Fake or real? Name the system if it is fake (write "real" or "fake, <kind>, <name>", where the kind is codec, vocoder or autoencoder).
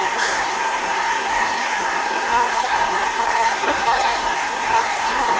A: fake, codec, SNAC